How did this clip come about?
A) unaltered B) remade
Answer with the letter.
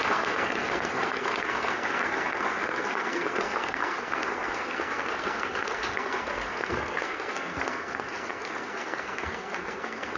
B